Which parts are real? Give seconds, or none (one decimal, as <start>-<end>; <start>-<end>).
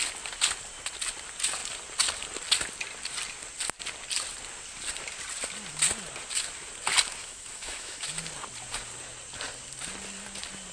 0.0-7.2; 8.0-10.7